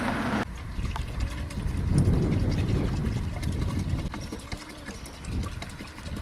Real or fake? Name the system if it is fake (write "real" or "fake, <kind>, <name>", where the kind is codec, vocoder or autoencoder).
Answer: real